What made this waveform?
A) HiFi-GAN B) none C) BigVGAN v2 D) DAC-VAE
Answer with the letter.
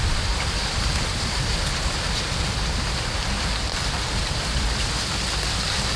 C